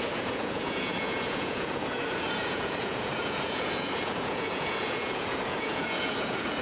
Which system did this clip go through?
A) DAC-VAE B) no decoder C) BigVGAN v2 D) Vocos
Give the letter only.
D